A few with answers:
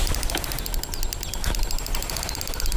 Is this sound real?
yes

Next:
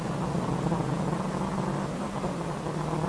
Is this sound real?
yes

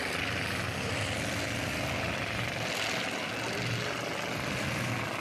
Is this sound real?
yes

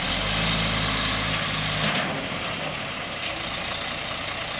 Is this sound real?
yes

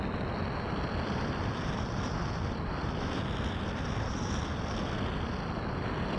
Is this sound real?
yes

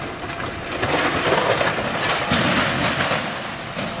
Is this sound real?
yes